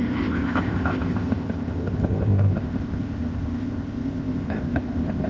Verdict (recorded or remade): remade